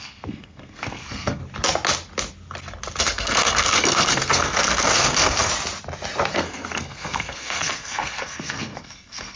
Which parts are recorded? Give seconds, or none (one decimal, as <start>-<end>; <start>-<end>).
1.4-3.0; 5.5-6.3